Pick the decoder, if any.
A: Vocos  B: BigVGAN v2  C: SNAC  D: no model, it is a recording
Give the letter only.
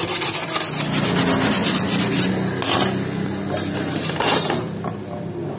D